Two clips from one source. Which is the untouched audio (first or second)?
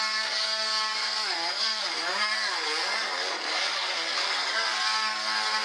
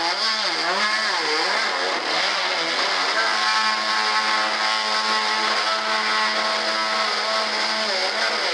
second